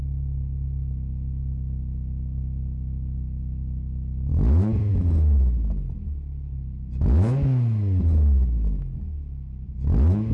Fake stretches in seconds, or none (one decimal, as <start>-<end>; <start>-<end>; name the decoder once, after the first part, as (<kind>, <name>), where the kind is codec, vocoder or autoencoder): none